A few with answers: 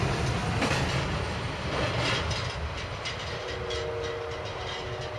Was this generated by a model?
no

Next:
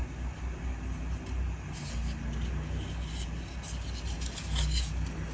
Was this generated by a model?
no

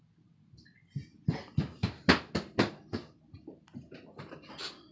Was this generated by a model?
no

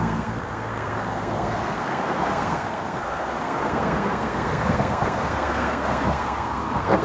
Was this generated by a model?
yes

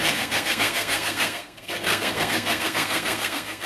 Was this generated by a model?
yes